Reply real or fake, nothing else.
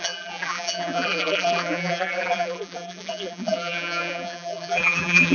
fake